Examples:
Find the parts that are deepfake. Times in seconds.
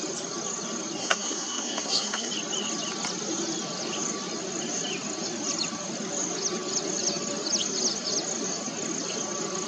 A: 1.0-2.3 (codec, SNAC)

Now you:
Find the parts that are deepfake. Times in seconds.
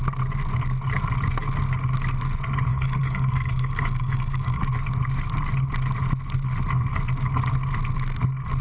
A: 2.7-4.6 (codec, DAC)